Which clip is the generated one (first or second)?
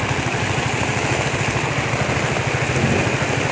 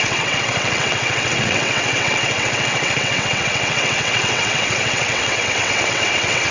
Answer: second